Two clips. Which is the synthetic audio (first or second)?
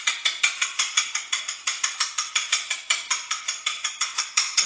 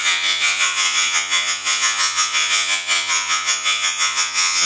second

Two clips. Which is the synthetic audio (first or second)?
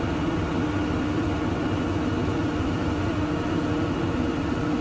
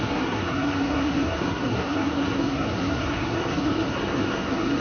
second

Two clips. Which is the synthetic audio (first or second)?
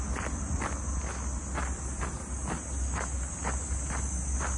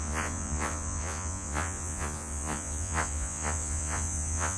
second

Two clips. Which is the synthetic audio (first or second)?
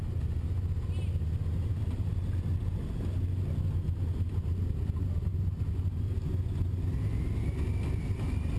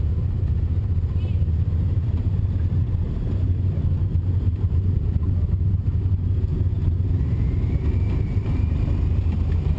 second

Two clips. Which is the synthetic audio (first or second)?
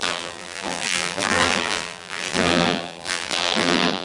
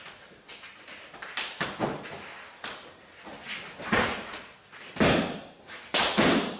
first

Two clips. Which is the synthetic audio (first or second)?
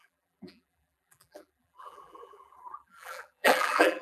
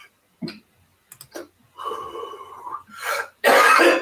first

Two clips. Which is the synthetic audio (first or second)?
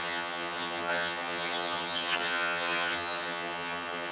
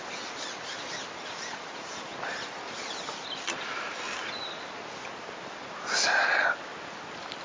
first